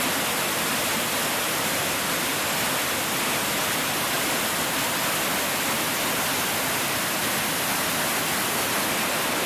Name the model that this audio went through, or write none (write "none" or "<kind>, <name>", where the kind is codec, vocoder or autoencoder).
none